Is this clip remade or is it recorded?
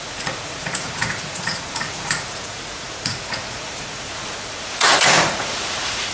remade